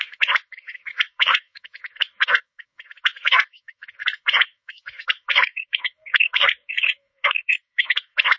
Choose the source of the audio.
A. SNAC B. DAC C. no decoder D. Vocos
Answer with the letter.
B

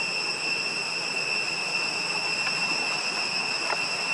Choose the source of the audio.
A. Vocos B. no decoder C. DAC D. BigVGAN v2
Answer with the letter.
B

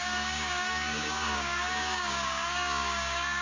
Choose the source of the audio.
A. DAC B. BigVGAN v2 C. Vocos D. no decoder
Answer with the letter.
A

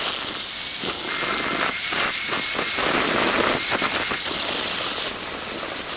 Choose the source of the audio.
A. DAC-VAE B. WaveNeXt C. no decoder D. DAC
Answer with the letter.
C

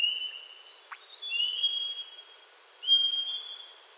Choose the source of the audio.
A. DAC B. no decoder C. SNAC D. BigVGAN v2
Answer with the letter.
B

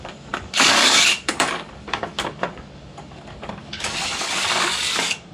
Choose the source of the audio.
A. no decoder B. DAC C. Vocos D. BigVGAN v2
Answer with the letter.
B